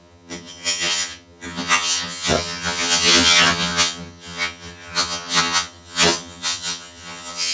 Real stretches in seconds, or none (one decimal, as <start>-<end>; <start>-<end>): none